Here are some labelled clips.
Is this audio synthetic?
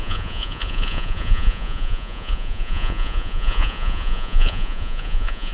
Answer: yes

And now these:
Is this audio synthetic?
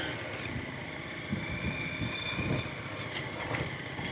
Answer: no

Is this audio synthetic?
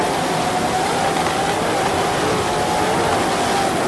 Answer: no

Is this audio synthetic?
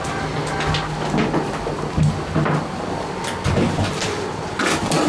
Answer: no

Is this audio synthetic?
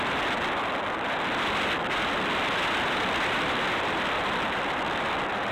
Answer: yes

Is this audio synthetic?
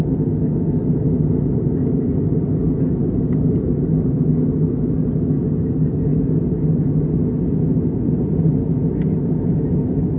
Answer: no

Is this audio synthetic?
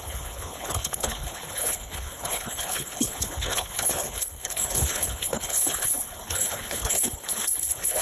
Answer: yes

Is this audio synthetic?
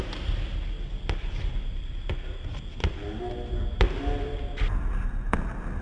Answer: no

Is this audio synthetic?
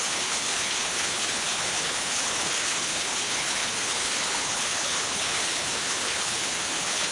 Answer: yes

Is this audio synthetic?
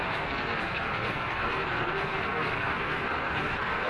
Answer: yes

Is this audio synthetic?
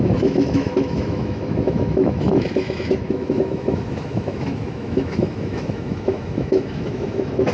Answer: yes